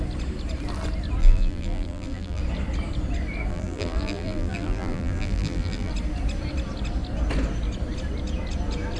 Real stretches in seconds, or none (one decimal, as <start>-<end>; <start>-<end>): 0.0-1.2; 2.4-3.5; 5.9-9.0